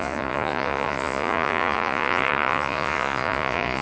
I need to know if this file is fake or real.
fake